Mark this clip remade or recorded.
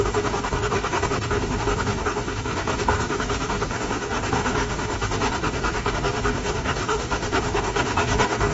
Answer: remade